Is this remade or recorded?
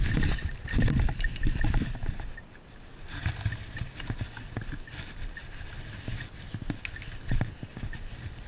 recorded